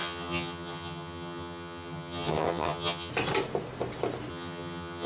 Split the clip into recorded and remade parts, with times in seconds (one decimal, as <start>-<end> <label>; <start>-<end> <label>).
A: 0.0-3.1 remade; 3.1-4.3 recorded; 4.3-5.1 remade